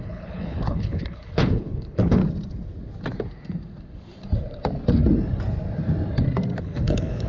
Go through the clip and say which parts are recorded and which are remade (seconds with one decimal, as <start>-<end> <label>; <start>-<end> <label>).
0.0-2.2 remade; 2.2-6.6 recorded; 6.6-7.3 remade